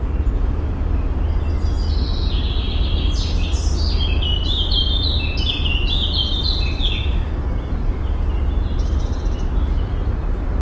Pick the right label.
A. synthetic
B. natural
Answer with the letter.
B